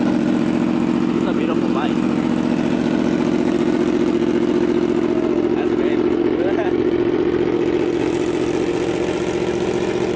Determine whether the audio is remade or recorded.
recorded